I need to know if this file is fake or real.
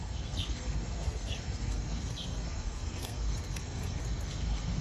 fake